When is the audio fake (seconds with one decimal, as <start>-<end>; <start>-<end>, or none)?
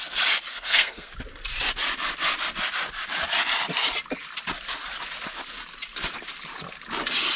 0.5-1.1